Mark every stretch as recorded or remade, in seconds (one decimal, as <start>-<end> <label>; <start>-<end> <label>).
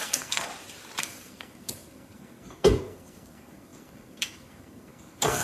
0.0-0.5 remade; 0.5-1.0 recorded; 1.0-5.4 remade